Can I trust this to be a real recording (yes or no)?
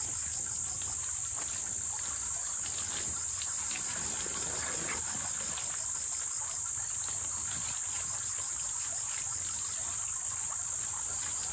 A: yes